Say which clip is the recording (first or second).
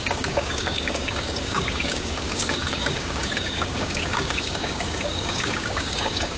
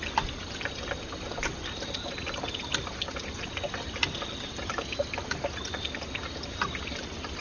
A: second